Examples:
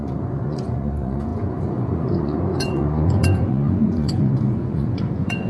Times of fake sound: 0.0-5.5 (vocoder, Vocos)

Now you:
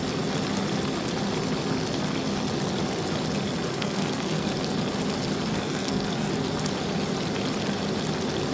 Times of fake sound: 3.7-4.5 (codec, SNAC); 5.5-6.3

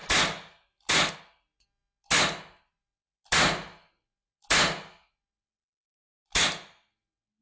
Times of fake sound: 0.0-1.1 (vocoder, BigVGAN v2)

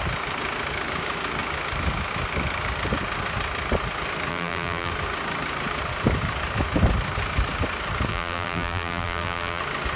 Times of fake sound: 4.3-4.9 (vocoder, BigVGAN v2); 8.1-9.6

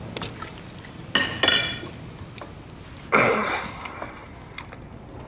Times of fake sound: none

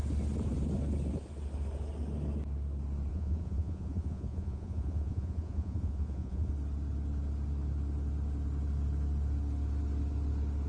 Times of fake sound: 3.1-6.5 (vocoder, Vocos)

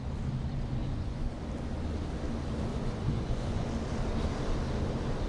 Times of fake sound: 0.8-1.4 (vocoder, Vocos); 2.7-3.7